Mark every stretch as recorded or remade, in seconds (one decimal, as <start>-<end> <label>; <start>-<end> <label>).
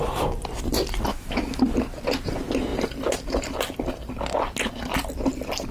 0.0-1.1 recorded; 1.1-1.6 remade; 1.6-5.7 recorded